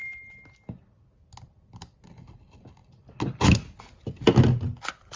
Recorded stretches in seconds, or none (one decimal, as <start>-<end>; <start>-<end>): 0.0-5.2